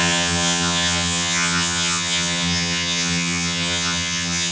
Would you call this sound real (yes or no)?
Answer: no